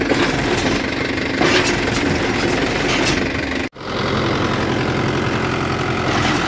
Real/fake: real